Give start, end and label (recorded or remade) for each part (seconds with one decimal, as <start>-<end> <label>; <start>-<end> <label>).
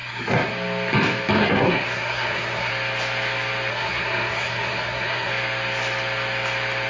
0.0-0.5 remade; 0.5-1.4 recorded; 1.4-2.7 remade; 2.7-3.7 recorded; 3.7-5.3 remade; 5.3-6.9 recorded